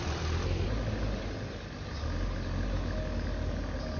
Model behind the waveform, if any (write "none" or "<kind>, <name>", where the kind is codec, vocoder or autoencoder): none